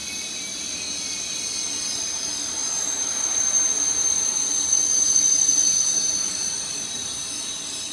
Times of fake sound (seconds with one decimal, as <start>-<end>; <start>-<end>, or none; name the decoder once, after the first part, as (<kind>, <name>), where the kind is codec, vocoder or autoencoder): 2.0-7.9 (vocoder, BigVGAN v2)

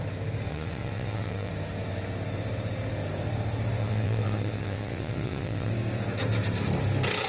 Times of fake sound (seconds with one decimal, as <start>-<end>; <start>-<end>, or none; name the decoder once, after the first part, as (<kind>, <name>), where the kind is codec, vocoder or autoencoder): 0.5-1.5 (vocoder, WaveNeXt); 3.8-5.7

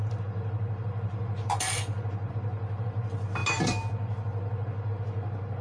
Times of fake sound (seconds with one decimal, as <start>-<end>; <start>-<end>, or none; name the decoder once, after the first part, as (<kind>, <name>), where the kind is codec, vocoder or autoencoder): none

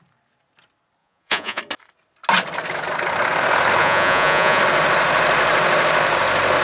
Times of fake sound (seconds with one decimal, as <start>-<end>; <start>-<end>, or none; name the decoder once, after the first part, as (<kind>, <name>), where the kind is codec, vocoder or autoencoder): 1.0-1.6 (vocoder, Vocos); 3.8-4.6

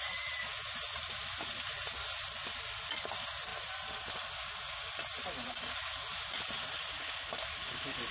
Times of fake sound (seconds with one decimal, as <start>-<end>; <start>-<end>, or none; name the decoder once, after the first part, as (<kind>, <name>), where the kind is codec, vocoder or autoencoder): none

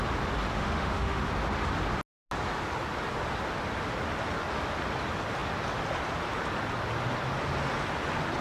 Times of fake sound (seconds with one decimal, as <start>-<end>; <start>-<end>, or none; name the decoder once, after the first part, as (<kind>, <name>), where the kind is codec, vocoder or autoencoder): 0.5-1.3 (autoencoder, DAC-VAE)